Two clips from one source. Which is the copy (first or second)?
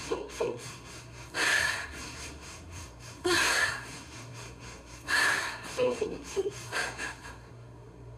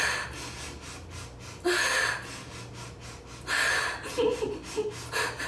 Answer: first